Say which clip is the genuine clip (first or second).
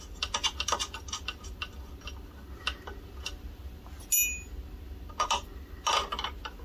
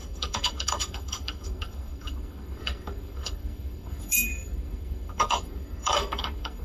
first